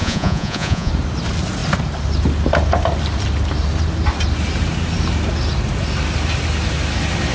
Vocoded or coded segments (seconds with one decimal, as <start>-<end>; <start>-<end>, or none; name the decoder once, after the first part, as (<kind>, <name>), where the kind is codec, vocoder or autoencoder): 0.0-0.9 (vocoder, Vocos)